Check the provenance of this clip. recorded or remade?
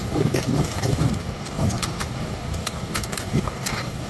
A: remade